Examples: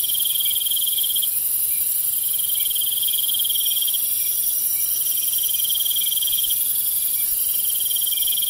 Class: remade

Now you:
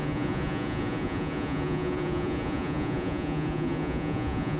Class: remade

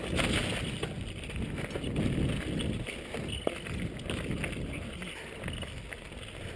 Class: recorded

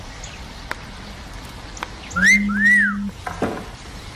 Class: recorded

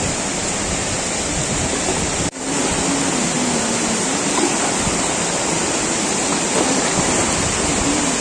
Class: recorded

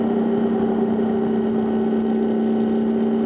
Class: recorded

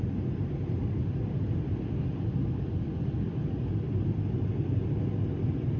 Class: recorded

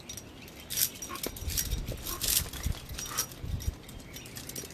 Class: recorded